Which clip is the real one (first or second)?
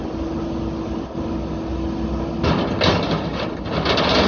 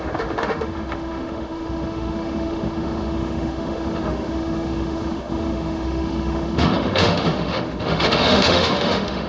first